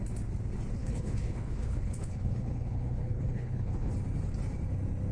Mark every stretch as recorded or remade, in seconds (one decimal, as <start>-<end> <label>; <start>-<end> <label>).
0.0-0.8 recorded; 0.8-3.9 remade; 3.9-5.1 recorded